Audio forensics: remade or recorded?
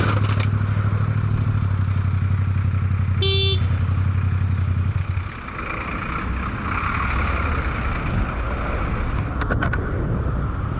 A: recorded